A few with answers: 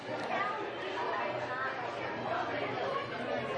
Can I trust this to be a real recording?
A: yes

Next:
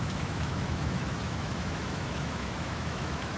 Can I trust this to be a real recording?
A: no